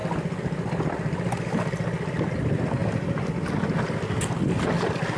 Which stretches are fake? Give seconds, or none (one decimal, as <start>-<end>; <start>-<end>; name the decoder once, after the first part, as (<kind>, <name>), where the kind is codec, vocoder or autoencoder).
none